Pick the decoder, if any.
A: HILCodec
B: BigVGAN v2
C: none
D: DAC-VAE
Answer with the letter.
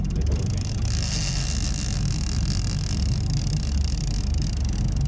C